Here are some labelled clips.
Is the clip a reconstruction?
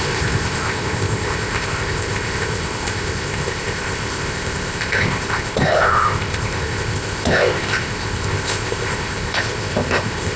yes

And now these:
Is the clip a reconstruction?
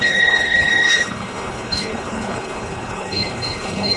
yes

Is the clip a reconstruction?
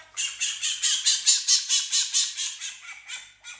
no